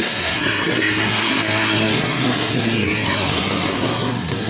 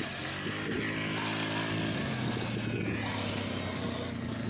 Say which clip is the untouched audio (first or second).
second